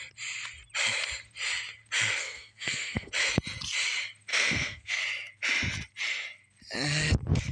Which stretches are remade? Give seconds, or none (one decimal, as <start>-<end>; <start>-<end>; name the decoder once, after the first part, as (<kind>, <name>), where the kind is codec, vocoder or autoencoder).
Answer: 2.2-3.1 (codec, SNAC); 4.3-5.0